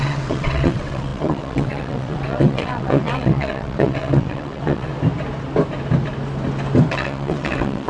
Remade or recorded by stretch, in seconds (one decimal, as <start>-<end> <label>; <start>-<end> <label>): 0.0-4.9 remade; 4.9-6.9 recorded; 6.9-7.9 remade